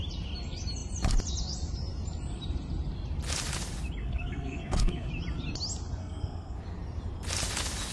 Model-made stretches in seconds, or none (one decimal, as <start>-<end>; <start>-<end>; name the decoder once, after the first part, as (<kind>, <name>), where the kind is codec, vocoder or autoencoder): 4.0-5.1 (codec, SNAC); 6.0-6.6